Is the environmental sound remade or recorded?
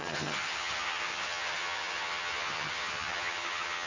remade